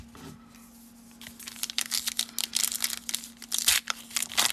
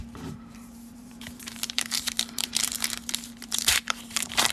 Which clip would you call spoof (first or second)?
second